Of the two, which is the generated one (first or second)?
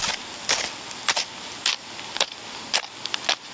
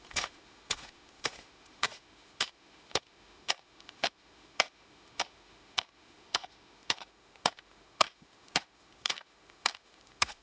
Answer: second